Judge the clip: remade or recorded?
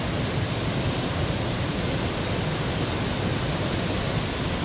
recorded